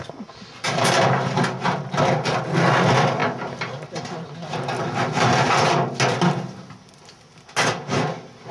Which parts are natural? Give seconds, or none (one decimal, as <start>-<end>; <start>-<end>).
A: 0.0-8.5